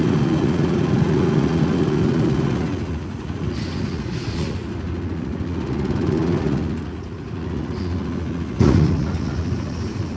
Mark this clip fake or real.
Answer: fake